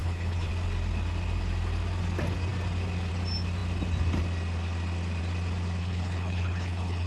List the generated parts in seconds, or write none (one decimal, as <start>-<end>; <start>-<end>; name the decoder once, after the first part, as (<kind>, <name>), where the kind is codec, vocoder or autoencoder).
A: 0.0-0.5 (codec, HILCodec); 5.8-7.1